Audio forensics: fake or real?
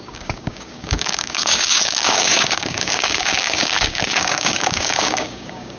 fake